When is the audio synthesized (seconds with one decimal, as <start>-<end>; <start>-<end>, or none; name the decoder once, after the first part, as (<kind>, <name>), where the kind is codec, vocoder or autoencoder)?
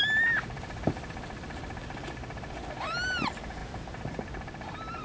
none